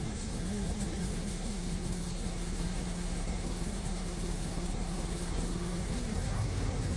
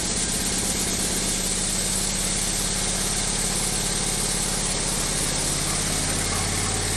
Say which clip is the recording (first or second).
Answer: second